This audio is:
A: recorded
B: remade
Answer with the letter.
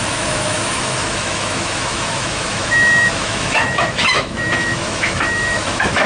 B